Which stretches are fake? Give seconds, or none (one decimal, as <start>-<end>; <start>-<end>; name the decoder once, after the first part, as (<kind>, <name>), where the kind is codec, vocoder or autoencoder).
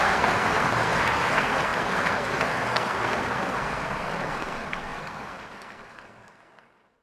0.0-7.0 (codec, SNAC)